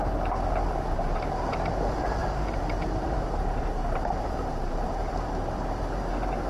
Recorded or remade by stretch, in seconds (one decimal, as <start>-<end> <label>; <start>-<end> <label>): 0.0-2.2 recorded; 2.2-6.1 remade; 6.1-6.5 recorded